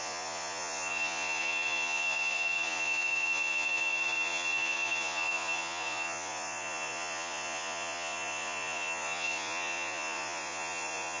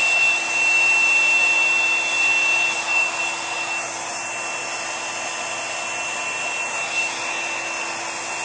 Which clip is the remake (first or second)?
first